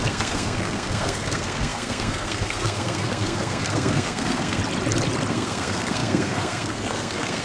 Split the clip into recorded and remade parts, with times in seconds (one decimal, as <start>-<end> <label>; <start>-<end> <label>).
0.0-4.6 remade; 4.6-5.3 recorded; 5.3-7.4 remade